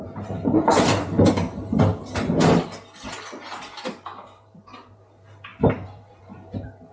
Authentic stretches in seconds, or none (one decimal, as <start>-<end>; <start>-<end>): 1.9-3.8